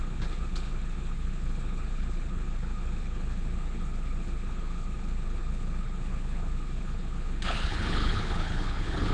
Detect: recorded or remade remade